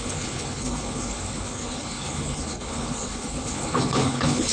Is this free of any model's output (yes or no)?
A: no